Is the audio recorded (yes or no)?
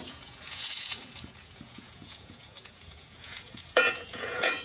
no